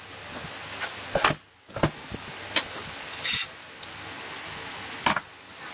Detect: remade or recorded recorded